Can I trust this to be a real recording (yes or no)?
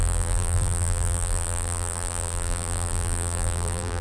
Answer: no